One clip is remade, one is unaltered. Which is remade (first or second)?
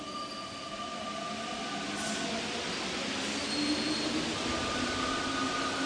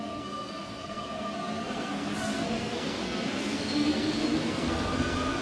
second